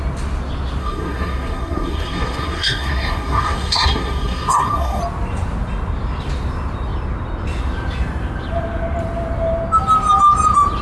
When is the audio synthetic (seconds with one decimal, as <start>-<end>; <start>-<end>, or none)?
0.8-5.0